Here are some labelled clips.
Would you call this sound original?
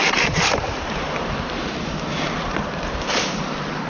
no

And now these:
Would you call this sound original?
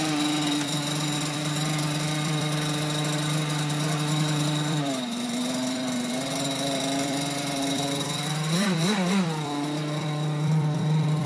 no